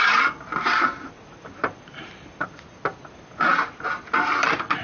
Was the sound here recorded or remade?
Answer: recorded